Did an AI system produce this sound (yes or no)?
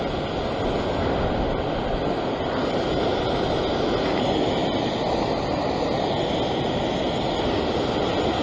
no